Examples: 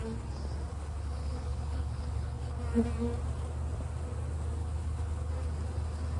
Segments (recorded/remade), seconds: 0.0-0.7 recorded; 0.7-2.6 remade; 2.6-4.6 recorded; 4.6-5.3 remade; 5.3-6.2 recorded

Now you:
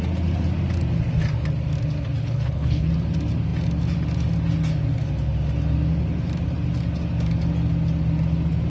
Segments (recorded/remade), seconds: 0.0-2.2 recorded; 2.2-2.9 remade; 2.9-8.7 recorded

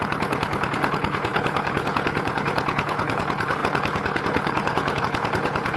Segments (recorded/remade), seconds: 0.0-5.8 remade

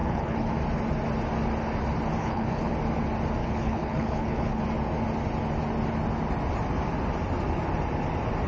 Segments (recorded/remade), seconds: 0.0-0.5 remade; 0.5-2.2 recorded; 2.2-2.7 remade; 2.7-3.4 recorded; 3.4-4.6 remade; 4.6-8.5 recorded

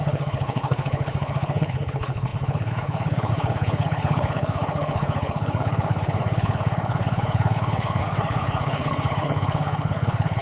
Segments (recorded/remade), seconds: 0.0-10.4 remade

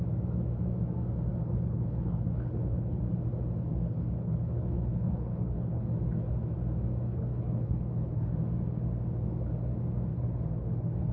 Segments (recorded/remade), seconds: 0.0-1.3 recorded; 1.3-3.0 remade; 3.0-3.7 recorded; 3.7-5.8 remade; 5.8-7.1 recorded; 7.1-8.3 remade; 8.3-10.1 recorded; 10.1-11.1 remade

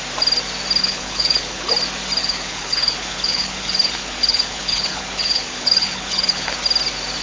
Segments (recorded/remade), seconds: 0.0-0.8 recorded; 0.8-1.7 remade; 1.7-2.2 recorded; 2.2-6.5 remade; 6.5-7.2 recorded

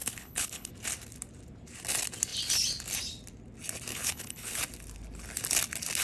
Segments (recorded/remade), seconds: 0.0-0.7 remade; 0.7-3.9 recorded; 3.9-4.6 remade; 4.6-6.0 recorded